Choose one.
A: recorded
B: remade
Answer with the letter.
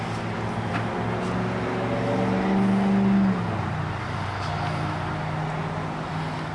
A